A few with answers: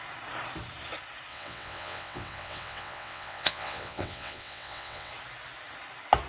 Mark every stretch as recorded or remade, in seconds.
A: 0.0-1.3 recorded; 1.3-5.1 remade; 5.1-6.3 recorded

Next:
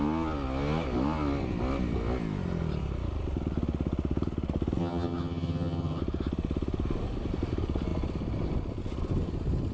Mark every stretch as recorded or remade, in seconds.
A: 0.0-4.8 recorded; 4.8-6.0 remade; 6.0-9.7 recorded

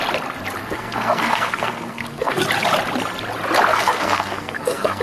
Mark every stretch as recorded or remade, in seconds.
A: 0.0-0.6 recorded; 0.6-2.4 remade; 2.4-3.7 recorded; 3.7-5.0 remade

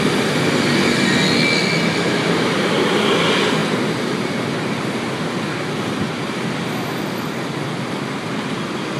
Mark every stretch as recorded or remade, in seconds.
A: 0.0-9.0 recorded

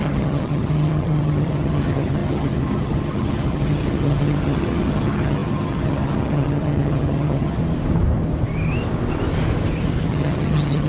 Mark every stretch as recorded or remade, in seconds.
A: 0.0-7.6 remade; 7.6-10.1 recorded; 10.1-10.9 remade

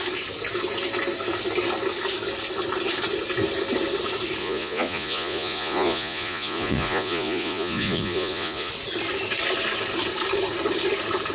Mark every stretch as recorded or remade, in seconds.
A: 0.0-4.4 recorded; 4.4-8.7 remade; 8.7-11.3 recorded

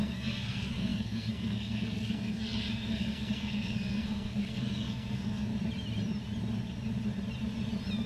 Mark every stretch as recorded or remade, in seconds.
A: 0.0-5.5 remade; 5.5-8.1 recorded